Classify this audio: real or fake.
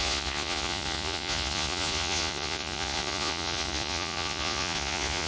fake